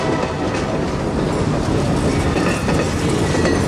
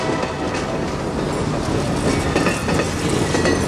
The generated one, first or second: first